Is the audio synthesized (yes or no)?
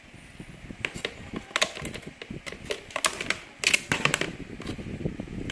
no